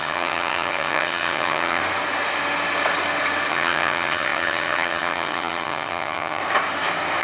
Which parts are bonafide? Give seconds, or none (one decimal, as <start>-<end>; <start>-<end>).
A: 1.8-3.5; 6.4-7.2

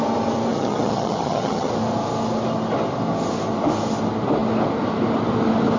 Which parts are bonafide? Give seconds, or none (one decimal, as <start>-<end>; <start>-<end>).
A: 0.0-0.5; 1.7-5.8

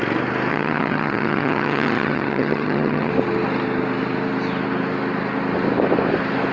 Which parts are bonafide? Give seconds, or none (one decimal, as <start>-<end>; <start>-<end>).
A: 0.0-0.5; 3.1-6.5

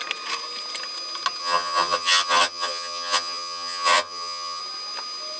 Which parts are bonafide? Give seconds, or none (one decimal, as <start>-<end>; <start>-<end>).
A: 0.0-1.4; 4.6-5.4